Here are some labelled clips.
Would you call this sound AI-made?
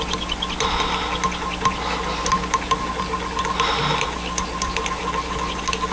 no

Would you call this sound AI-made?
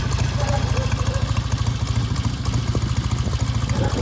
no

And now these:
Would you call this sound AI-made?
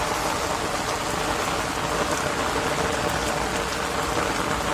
no